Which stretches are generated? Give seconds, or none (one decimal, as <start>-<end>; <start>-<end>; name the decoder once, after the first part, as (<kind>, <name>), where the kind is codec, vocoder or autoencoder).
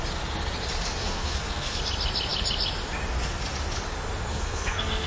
1.0-1.8 (codec, SNAC); 4.3-5.1